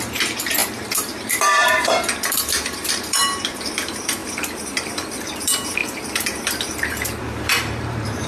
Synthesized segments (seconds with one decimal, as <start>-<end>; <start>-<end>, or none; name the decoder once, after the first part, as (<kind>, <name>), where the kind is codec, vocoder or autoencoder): 0.0-8.3 (vocoder, BigVGAN v2)